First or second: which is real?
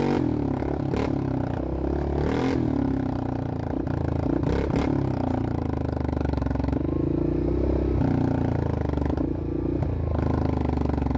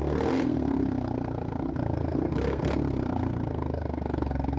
first